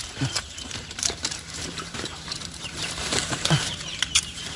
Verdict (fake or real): fake